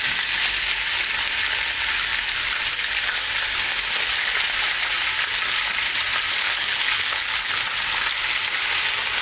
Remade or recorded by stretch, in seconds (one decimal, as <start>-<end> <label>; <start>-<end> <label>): 0.0-6.4 recorded; 6.4-7.5 remade; 7.5-9.2 recorded